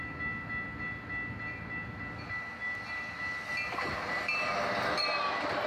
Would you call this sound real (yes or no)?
yes